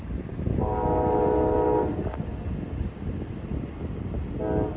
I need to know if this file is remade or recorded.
recorded